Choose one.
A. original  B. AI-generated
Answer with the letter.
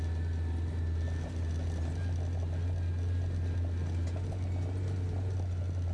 A